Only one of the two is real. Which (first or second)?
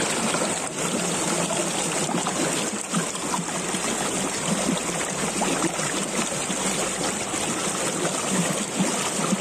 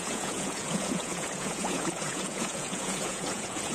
first